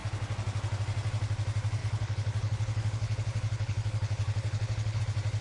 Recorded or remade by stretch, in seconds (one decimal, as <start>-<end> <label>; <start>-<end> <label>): 0.0-1.8 recorded; 1.8-5.0 remade; 5.0-5.4 recorded

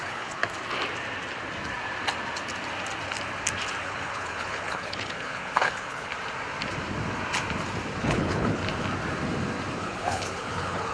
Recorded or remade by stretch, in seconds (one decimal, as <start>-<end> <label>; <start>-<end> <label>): 0.0-0.4 remade; 0.4-3.8 recorded; 3.8-6.1 remade; 6.1-8.0 recorded; 8.0-8.6 remade; 8.6-9.8 recorded; 9.8-10.9 remade